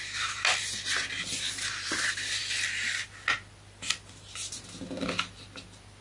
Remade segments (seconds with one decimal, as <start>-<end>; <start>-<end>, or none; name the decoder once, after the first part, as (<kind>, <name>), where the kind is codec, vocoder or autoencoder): none